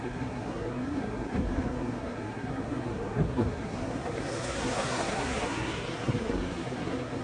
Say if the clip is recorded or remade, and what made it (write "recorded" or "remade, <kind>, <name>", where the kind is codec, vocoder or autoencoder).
remade, codec, SNAC